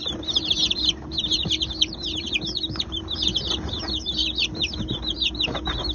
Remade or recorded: remade